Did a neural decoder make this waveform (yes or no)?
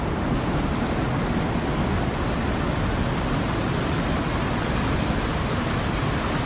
no